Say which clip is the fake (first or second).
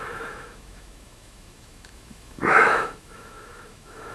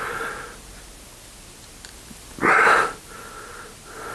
first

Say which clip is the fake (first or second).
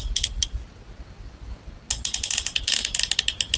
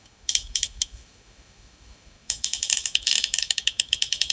second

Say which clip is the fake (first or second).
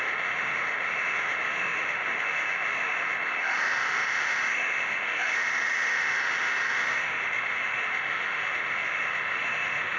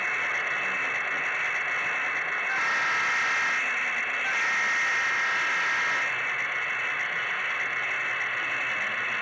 first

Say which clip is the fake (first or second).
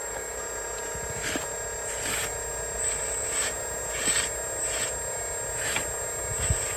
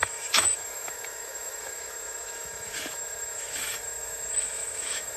second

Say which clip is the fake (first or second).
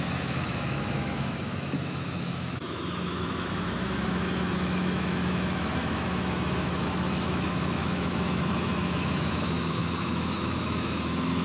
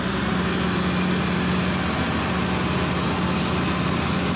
first